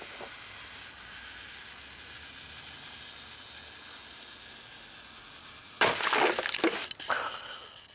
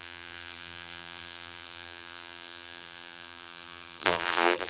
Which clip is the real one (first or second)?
first